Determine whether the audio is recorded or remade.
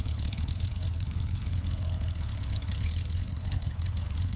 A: remade